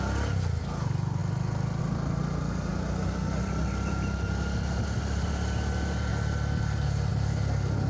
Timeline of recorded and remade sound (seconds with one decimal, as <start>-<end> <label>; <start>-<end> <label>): 0.0-7.9 recorded